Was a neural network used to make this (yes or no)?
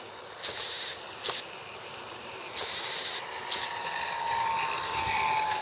no